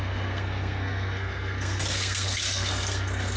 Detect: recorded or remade remade